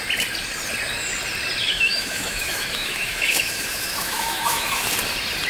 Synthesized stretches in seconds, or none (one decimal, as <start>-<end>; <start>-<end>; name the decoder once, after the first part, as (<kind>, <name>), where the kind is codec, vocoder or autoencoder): 1.6-4.9 (autoencoder, DAC-VAE)